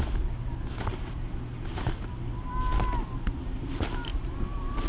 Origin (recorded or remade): recorded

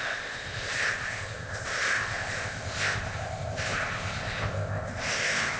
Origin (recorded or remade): remade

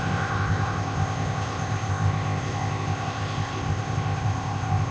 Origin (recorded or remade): remade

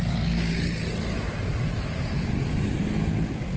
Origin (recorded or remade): recorded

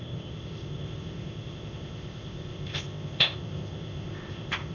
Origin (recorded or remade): remade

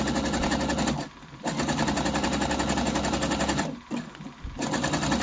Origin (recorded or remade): recorded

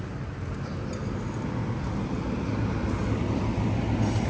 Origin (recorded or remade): recorded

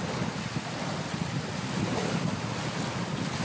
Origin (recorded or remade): recorded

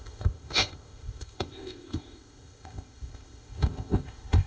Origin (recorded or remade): remade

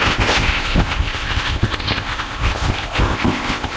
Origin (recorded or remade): remade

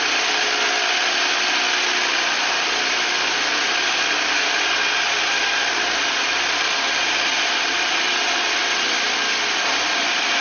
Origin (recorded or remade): recorded